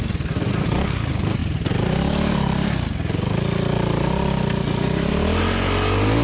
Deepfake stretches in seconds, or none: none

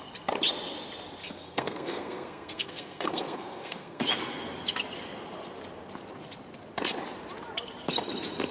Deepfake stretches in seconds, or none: 1.2-4.0 (codec, SNAC)

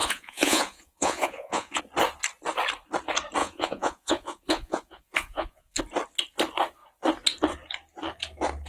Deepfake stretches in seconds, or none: 0.0-1.8 (vocoder, Vocos); 3.4-5.8